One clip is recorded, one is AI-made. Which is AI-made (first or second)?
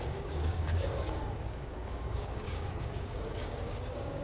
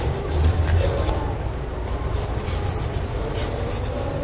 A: first